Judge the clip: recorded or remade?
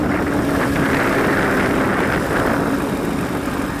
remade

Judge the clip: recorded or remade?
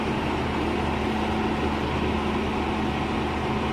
recorded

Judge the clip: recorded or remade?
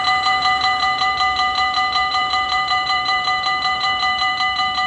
remade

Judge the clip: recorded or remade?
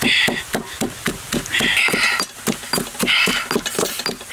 recorded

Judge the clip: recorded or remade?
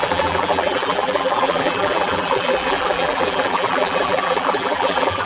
remade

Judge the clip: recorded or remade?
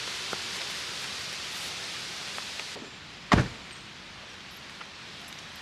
recorded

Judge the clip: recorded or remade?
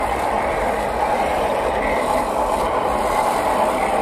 remade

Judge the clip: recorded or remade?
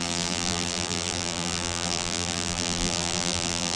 remade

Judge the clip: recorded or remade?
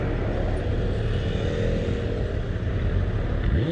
recorded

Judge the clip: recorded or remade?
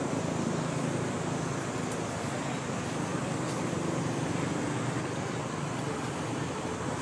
recorded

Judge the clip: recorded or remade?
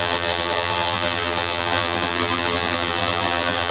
remade